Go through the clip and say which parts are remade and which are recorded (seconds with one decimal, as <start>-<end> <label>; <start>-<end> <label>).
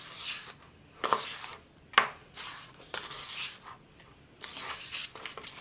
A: 0.0-2.2 recorded; 2.2-2.9 remade; 2.9-5.6 recorded